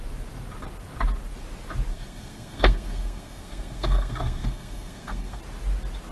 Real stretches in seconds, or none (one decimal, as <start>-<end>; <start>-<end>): 0.0-1.9; 5.4-6.1